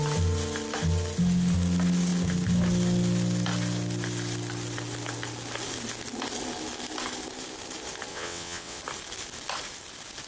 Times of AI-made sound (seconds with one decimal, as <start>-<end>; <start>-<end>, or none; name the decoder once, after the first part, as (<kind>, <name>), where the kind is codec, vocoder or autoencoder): 8.1-8.8 (vocoder, WaveNeXt)